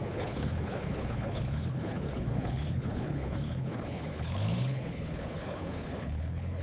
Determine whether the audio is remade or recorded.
remade